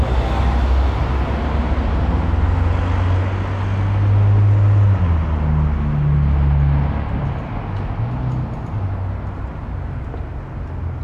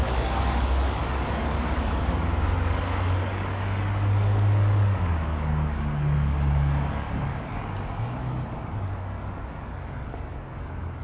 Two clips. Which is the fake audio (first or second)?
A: second